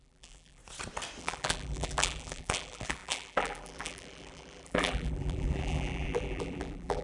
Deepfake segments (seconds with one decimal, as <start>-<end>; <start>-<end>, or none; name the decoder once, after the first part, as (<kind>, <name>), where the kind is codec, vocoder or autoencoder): 0.0-0.6 (vocoder, BigVGAN v2); 1.2-7.0